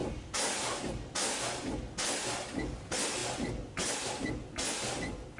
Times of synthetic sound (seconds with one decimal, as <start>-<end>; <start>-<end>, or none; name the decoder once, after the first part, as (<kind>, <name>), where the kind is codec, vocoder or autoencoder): none